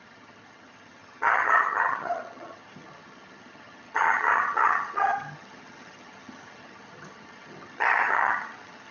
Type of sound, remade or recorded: remade